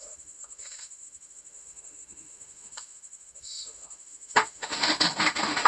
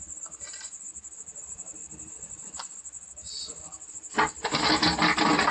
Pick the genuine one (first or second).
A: second